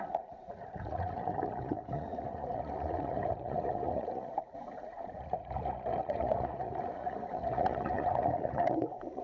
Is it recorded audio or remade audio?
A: remade